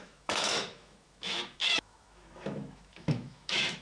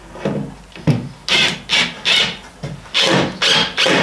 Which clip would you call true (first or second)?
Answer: second